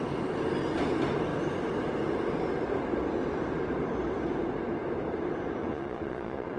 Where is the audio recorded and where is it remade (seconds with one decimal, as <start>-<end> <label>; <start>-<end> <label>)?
0.0-5.6 recorded; 5.6-6.6 remade